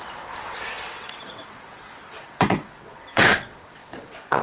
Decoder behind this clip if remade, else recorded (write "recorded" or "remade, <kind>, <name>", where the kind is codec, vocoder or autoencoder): remade, vocoder, WaveNeXt